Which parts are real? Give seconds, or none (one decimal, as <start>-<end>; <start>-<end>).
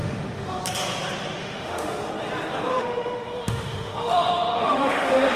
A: 0.6-1.4; 2.1-2.7